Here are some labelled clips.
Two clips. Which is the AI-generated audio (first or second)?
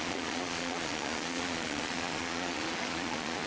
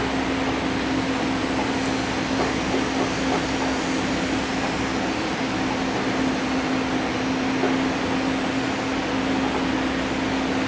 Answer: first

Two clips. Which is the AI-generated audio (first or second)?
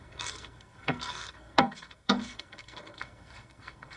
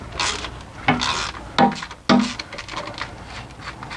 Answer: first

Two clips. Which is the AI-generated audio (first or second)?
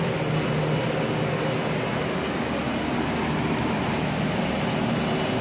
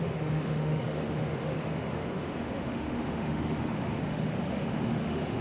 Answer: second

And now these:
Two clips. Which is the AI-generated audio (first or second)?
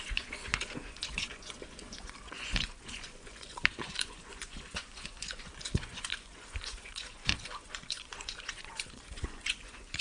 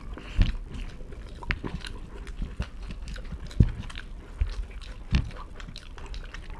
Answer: first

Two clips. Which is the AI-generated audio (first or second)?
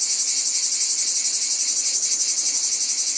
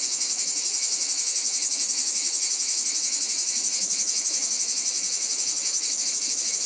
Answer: second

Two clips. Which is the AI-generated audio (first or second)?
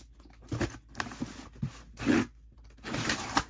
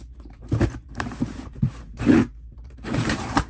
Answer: second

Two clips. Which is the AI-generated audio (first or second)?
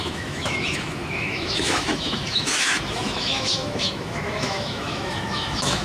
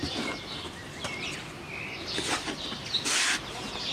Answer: first